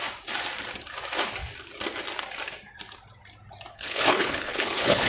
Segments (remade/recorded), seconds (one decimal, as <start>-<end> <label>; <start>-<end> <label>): 0.0-3.7 recorded; 3.7-5.1 remade